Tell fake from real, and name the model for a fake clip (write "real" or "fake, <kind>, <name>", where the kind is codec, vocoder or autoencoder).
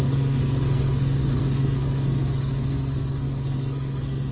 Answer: fake, codec, SNAC